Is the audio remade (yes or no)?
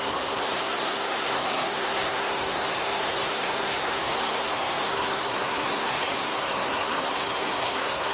yes